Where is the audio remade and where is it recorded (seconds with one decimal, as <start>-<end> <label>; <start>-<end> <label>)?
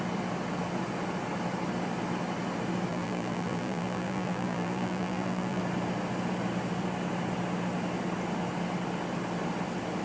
0.0-2.9 recorded; 2.9-5.6 remade; 5.6-10.0 recorded